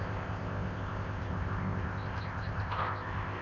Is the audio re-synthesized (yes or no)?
yes